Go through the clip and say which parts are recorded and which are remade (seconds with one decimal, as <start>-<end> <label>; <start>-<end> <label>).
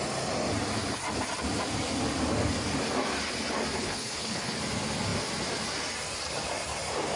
0.0-3.8 recorded; 3.8-4.6 remade; 4.6-7.2 recorded